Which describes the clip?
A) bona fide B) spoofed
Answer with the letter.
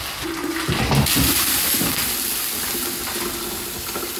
A